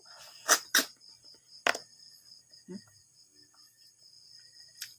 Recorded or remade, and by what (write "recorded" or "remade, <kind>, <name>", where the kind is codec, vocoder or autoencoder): recorded